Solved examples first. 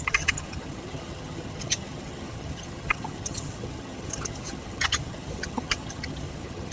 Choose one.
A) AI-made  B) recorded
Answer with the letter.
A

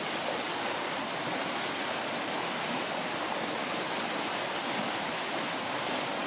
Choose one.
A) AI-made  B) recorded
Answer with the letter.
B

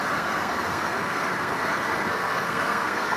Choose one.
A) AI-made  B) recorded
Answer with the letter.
A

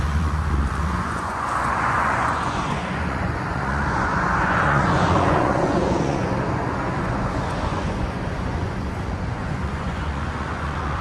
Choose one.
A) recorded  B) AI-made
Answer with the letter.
B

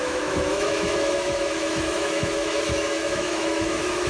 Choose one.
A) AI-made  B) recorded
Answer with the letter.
A